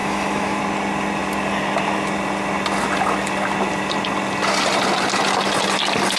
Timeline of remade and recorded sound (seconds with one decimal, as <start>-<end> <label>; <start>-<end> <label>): 0.0-0.6 remade; 0.6-6.2 recorded